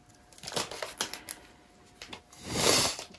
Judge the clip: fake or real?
real